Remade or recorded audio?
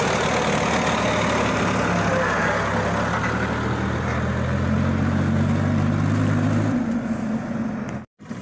recorded